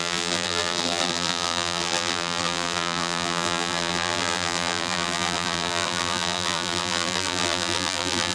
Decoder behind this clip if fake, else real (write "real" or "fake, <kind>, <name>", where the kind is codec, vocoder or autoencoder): fake, vocoder, BigVGAN v2